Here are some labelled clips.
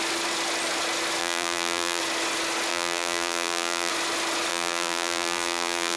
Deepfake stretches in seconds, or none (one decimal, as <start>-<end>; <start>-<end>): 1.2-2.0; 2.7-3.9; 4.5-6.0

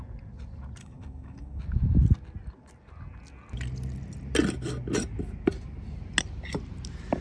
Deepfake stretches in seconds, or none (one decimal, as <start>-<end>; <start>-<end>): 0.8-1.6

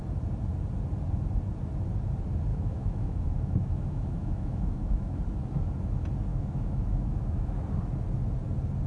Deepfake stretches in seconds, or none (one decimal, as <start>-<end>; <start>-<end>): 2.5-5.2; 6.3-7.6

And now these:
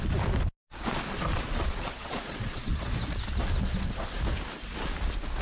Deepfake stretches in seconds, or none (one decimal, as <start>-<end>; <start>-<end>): 1.3-2.9